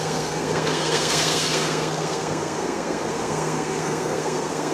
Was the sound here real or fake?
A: fake